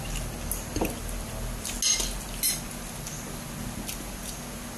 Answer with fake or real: real